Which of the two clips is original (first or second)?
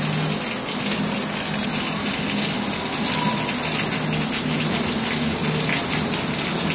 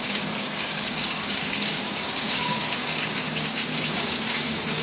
first